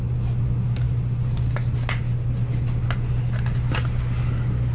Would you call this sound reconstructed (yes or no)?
no